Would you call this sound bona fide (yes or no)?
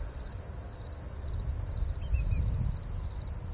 yes